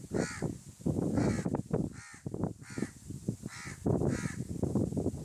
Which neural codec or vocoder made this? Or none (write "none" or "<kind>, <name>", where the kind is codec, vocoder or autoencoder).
none